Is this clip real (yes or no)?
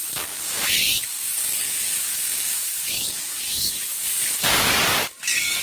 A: no